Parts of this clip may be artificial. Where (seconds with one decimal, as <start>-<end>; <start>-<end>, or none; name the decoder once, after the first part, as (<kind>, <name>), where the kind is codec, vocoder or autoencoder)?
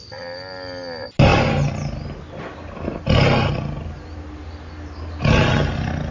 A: none